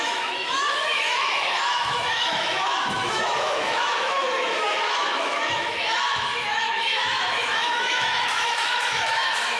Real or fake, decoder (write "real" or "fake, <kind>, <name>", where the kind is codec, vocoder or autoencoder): fake, autoencoder, DAC-VAE